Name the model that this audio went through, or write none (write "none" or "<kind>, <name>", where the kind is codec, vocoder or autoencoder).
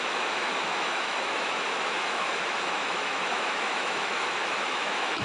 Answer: autoencoder, DAC-VAE